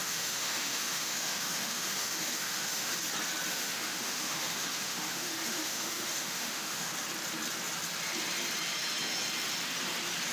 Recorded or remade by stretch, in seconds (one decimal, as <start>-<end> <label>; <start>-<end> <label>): 0.0-2.9 remade; 2.9-3.5 recorded; 3.5-6.9 remade; 6.9-10.3 recorded